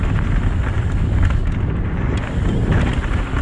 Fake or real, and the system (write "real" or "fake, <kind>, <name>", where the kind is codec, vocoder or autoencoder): real